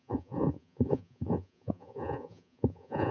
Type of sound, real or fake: fake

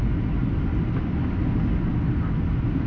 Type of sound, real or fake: real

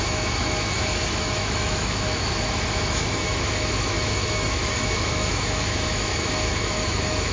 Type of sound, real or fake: fake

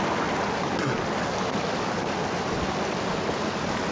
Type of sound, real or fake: real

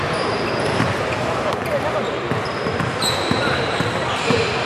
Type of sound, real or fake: fake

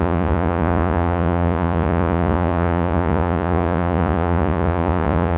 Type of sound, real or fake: fake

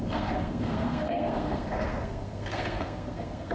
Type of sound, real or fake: fake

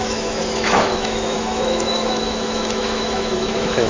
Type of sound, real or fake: fake